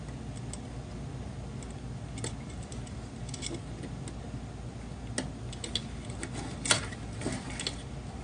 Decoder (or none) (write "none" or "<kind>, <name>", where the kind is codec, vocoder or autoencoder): none